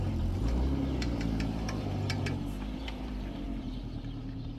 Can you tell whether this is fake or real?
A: fake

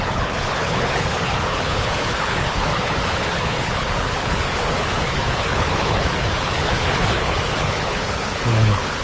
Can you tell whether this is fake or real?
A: fake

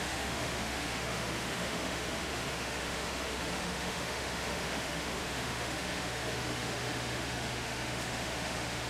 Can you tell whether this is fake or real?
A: fake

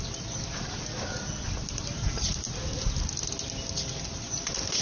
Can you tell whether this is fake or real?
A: real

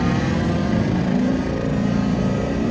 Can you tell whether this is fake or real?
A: fake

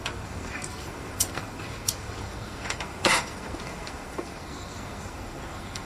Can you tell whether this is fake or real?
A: fake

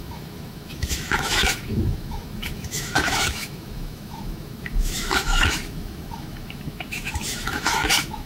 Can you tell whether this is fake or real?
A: fake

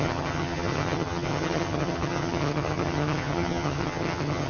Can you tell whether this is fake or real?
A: fake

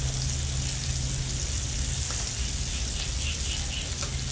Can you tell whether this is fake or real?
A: real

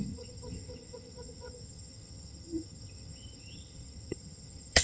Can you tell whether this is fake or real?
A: fake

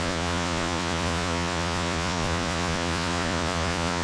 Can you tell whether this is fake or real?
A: fake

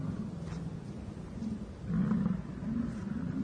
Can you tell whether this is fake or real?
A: real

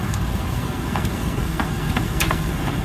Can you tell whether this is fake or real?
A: fake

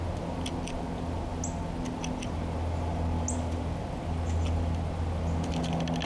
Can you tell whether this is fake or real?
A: real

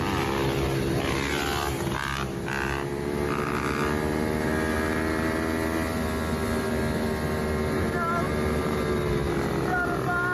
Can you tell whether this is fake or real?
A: real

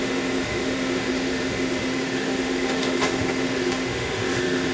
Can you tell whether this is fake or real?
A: fake